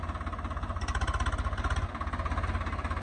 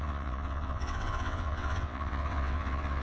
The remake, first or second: second